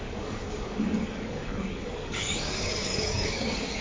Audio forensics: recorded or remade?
remade